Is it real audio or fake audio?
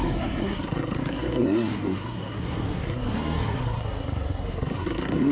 fake